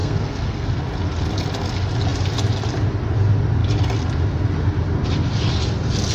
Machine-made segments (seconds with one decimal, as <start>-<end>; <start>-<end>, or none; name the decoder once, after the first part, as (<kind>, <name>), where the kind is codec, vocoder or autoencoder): 0.0-0.8 (codec, SNAC)